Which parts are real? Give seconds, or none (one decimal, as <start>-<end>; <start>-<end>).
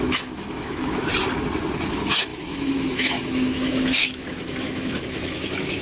1.1-1.9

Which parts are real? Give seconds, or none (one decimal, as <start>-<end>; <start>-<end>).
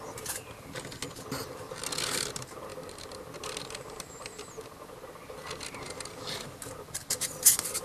0.0-7.8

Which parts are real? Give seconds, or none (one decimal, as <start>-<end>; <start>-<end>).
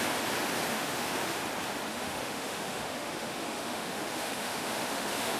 0.0-0.7; 1.4-1.9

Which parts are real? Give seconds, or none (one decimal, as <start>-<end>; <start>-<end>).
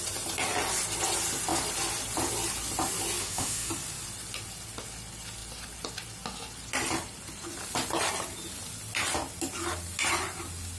0.0-3.2; 3.7-10.8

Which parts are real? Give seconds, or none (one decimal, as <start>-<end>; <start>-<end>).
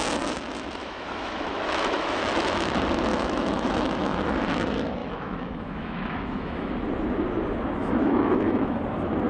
0.0-0.8; 2.7-3.1; 4.2-5.0; 6.7-7.8; 8.8-9.3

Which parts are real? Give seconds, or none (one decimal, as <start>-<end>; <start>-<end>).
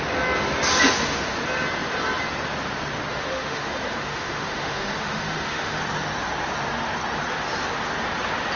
0.0-3.1; 5.8-8.6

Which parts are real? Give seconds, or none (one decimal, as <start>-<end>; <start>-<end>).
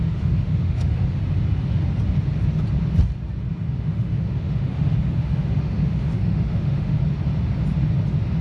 1.2-3.8; 7.0-8.4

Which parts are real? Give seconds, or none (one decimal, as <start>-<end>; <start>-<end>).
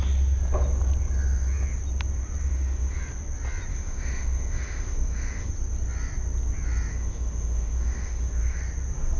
0.0-2.5; 3.0-3.7; 5.5-6.9; 8.6-9.2